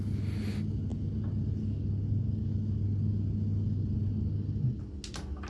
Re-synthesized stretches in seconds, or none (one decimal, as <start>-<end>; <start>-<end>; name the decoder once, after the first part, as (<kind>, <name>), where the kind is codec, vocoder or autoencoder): none